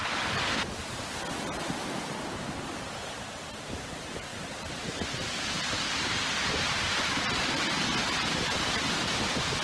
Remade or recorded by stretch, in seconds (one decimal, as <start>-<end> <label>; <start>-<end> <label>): 0.0-9.6 recorded